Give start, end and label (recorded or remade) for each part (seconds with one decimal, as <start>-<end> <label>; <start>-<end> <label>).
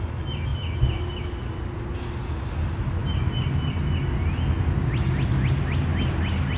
0.0-6.6 recorded